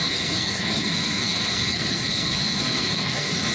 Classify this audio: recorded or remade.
remade